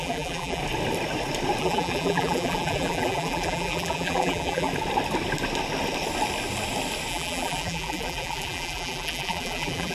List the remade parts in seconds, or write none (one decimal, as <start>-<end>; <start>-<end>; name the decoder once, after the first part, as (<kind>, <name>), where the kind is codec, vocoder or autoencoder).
0.0-0.6 (vocoder, BigVGAN v2); 1.6-4.7; 7.1-9.9